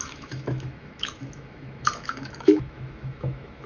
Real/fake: fake